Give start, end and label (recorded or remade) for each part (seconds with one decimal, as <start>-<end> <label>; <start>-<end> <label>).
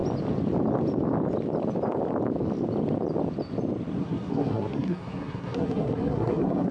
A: 0.0-4.0 recorded; 4.0-6.7 remade